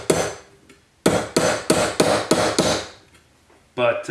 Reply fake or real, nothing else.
real